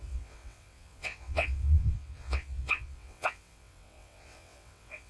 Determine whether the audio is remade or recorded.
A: remade